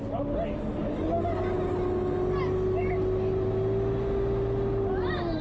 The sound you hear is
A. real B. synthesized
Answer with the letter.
A